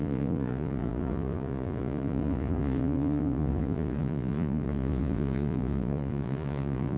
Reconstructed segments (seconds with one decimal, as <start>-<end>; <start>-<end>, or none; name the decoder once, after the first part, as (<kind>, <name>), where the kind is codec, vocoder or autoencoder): 0.0-7.0 (vocoder, Vocos)